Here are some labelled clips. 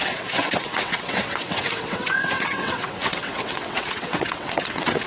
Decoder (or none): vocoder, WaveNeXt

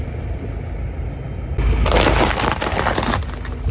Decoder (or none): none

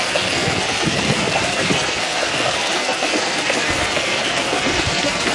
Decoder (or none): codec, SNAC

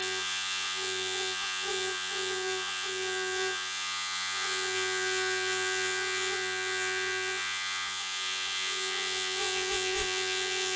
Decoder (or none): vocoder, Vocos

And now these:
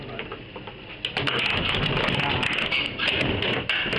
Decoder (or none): none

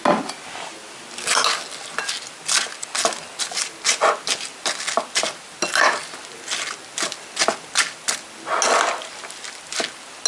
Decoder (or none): none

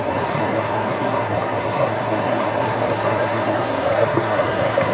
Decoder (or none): codec, SNAC